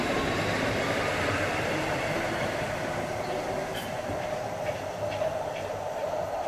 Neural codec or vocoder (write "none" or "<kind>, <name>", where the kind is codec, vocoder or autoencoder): vocoder, BigVGAN v2